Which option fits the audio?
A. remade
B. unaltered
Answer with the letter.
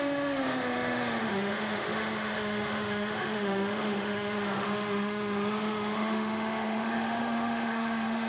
A